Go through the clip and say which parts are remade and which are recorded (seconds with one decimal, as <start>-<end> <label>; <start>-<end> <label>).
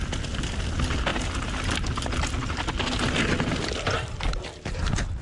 0.0-5.2 recorded